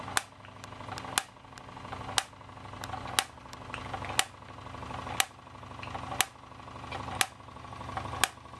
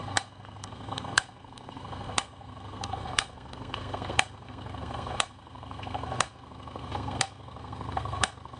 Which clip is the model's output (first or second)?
second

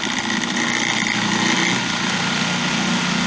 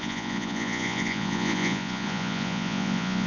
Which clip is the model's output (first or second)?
second